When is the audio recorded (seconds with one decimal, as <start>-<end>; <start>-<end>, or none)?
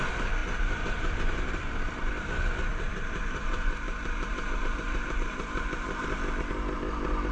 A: 0.0-0.4; 2.1-2.7; 6.0-7.3